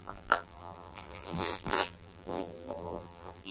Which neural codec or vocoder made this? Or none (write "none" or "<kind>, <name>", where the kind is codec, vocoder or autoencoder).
vocoder, BigVGAN v2